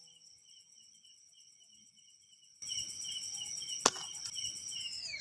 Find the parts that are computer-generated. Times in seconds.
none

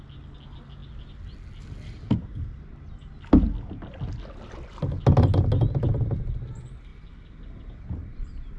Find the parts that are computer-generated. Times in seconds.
8.0-8.6 (vocoder, BigVGAN v2)